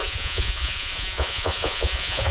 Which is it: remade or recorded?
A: remade